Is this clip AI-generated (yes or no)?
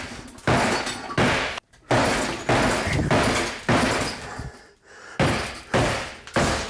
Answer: no